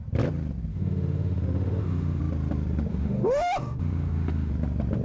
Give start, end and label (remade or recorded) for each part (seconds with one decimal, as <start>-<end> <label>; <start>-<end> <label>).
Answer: 0.0-0.7 recorded; 0.7-2.2 remade; 2.2-2.9 recorded; 2.9-4.5 remade; 4.5-5.0 recorded